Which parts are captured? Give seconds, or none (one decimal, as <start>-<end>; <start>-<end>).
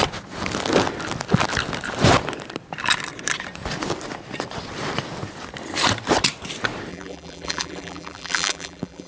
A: 0.0-6.9